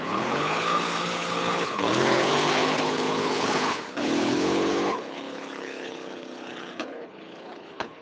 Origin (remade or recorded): remade